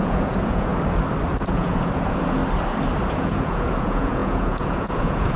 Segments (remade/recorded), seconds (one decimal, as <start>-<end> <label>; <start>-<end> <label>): 0.0-0.7 remade; 0.7-1.3 recorded; 1.3-2.4 remade; 2.4-3.1 recorded; 3.1-5.4 remade